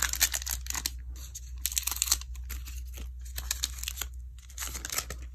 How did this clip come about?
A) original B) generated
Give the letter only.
A